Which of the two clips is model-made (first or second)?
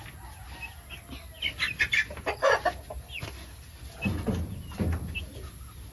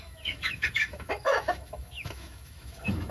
second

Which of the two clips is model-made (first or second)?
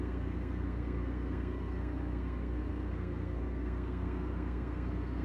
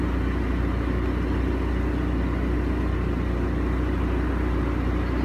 first